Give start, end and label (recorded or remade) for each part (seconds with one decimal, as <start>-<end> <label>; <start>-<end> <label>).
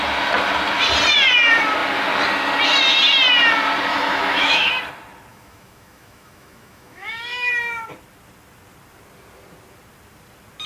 0.0-3.9 recorded; 3.9-4.7 remade; 4.7-5.3 recorded; 5.3-7.5 remade; 7.5-10.7 recorded